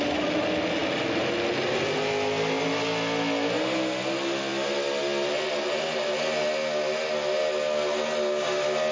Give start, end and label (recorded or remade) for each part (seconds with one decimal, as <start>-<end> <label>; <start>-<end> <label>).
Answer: 0.0-8.9 recorded